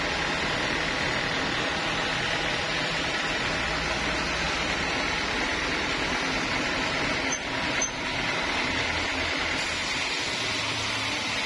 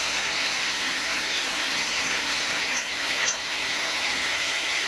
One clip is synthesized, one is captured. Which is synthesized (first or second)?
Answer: second